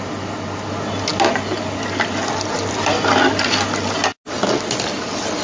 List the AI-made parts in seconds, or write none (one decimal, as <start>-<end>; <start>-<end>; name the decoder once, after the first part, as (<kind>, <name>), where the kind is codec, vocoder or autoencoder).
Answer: none